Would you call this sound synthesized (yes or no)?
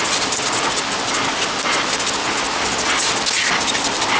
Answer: no